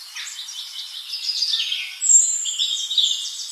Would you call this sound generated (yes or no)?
no